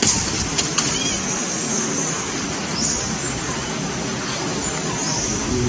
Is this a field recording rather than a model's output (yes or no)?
yes